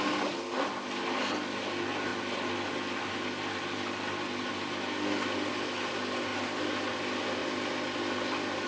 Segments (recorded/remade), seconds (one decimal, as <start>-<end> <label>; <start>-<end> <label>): 0.0-8.7 recorded